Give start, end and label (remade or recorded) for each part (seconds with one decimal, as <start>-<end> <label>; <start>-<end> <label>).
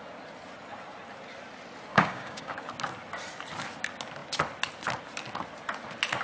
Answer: 0.0-1.9 recorded; 1.9-2.6 remade; 2.6-6.2 recorded